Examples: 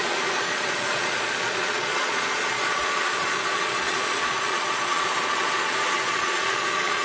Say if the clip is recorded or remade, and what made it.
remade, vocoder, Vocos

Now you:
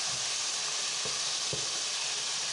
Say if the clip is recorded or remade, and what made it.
recorded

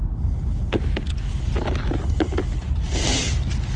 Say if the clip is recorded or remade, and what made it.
recorded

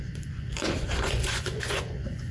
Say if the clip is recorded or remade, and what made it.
remade, vocoder, Vocos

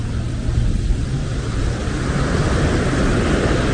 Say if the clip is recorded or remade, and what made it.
recorded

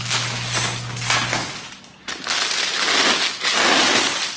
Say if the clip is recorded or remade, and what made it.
recorded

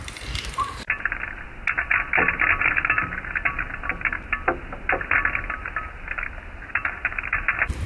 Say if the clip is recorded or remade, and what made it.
recorded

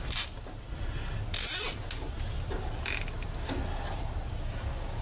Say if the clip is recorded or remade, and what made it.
recorded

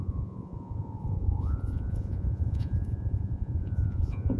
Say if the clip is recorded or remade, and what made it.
remade, vocoder, Vocos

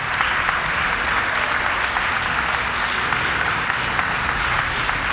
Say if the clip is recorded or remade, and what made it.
recorded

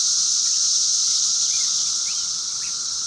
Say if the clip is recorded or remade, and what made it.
remade, vocoder, Vocos